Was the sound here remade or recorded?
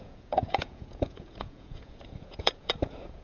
remade